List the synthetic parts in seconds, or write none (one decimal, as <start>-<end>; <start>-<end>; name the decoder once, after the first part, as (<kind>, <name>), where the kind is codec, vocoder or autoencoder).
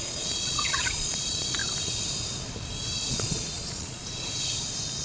0.0-1.6 (vocoder, Vocos); 3.1-4.0